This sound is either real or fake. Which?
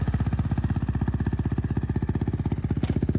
real